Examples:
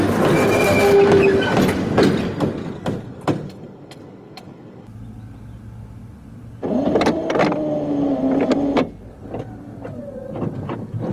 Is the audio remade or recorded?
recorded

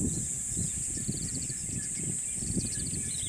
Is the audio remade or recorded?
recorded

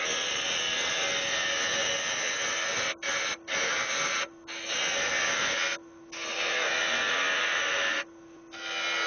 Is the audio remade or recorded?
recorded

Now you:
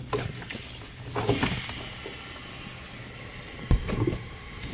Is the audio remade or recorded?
recorded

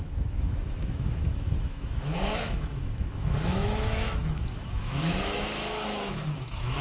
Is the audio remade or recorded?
remade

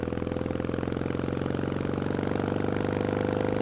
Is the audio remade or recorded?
recorded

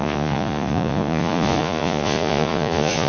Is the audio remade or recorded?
remade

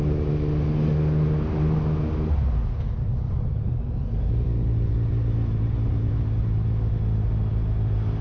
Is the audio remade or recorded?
recorded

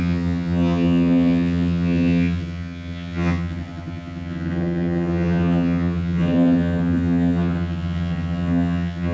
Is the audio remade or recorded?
remade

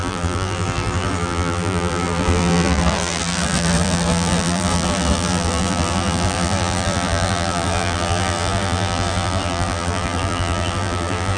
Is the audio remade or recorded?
remade